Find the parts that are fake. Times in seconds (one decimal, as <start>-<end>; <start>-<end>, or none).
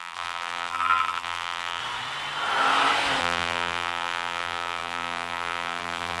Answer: 0.0-1.8; 3.2-6.2